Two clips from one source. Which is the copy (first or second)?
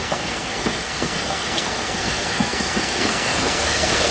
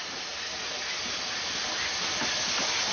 first